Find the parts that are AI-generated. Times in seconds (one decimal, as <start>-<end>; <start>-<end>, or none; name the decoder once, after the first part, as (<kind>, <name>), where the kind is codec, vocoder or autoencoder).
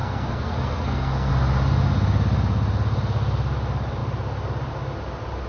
0.0-1.3 (codec, SNAC)